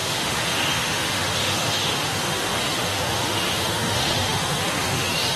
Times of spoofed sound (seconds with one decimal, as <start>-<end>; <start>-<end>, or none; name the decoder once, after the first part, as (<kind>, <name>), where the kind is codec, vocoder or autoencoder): 0.0-5.4 (autoencoder, DAC-VAE)